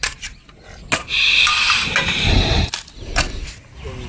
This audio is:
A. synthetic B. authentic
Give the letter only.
B